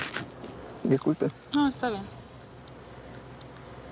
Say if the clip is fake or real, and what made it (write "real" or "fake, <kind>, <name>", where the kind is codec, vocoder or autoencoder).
real